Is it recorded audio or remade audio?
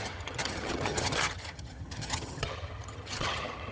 remade